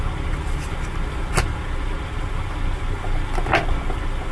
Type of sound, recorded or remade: recorded